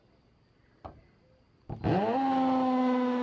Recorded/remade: recorded